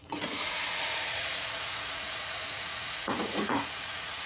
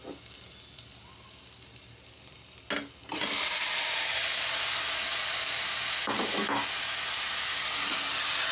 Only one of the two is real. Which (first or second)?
second